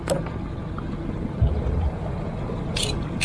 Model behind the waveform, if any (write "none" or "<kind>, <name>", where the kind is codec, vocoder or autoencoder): none